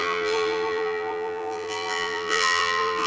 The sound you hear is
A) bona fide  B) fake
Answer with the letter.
B